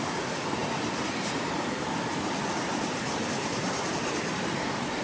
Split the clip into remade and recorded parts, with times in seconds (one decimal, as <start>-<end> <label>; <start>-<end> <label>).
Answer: 0.0-5.0 recorded